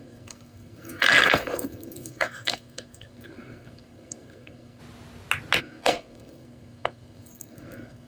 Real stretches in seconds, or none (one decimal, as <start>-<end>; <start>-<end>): 4.8-5.6